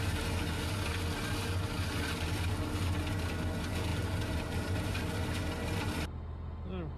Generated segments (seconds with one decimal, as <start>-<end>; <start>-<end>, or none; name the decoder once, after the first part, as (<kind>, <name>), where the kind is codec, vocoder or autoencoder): 3.9-5.0 (vocoder, BigVGAN v2)